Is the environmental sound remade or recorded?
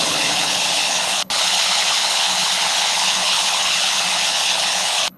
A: remade